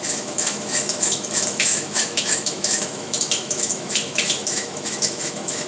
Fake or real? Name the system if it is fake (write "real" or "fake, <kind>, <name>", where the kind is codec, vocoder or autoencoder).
fake, autoencoder, DAC-VAE